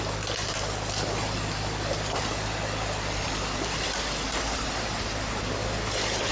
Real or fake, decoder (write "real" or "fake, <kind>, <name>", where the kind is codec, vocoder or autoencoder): real